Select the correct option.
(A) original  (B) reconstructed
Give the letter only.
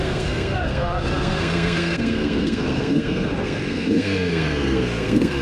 B